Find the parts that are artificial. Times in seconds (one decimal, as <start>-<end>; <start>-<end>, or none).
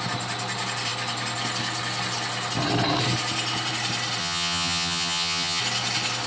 4.2-5.6